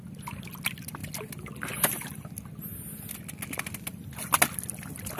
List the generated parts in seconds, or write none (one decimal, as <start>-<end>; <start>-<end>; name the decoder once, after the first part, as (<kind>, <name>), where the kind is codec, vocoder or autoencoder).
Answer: none